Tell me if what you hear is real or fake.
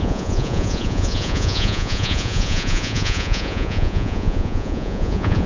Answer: fake